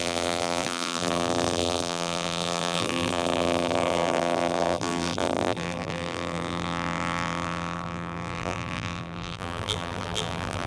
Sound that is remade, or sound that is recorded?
remade